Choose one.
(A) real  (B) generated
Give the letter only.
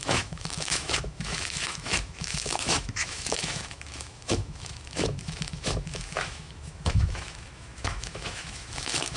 B